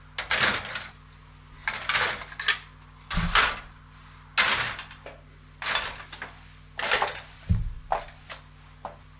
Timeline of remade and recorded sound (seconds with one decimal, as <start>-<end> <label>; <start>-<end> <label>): 0.0-9.2 recorded